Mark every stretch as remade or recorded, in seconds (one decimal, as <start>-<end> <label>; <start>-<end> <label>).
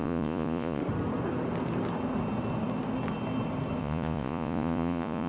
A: 0.0-0.8 remade; 0.8-3.8 recorded; 3.8-5.3 remade